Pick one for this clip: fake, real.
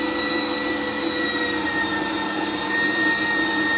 real